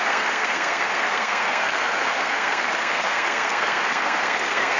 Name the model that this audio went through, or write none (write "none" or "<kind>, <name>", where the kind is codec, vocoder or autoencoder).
codec, SNAC